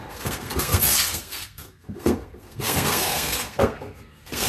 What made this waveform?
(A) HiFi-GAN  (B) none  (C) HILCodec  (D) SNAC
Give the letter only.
D